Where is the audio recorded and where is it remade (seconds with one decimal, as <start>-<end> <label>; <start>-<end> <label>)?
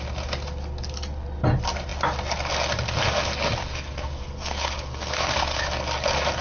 0.0-3.6 recorded; 3.6-5.6 remade; 5.6-6.4 recorded